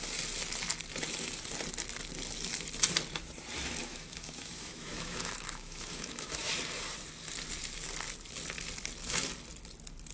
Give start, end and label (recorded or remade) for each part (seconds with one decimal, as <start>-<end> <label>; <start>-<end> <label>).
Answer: 0.0-3.8 recorded; 3.8-6.5 remade; 6.5-10.1 recorded